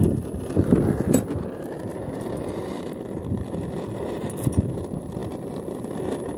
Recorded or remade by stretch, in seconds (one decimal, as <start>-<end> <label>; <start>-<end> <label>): 0.0-1.9 remade; 1.9-2.5 recorded; 2.5-6.4 remade